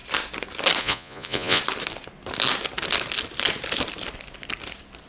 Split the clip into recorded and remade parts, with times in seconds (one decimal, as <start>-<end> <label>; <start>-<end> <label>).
0.0-0.8 recorded; 0.8-1.6 remade; 1.6-5.1 recorded